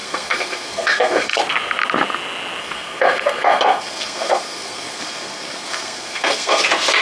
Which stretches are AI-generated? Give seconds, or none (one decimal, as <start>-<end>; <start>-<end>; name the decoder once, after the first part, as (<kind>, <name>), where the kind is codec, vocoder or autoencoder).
0.0-1.4 (codec, SNAC); 2.6-6.6